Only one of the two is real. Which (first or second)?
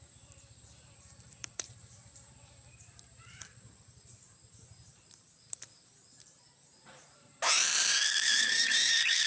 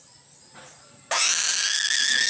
second